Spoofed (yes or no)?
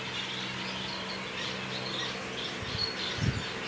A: no